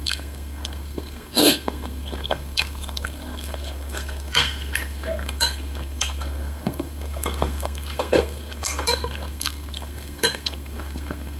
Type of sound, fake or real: fake